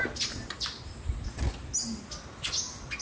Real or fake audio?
real